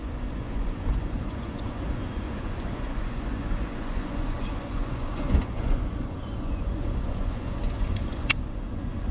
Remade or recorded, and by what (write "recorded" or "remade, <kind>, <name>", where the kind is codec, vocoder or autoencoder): remade, vocoder, Vocos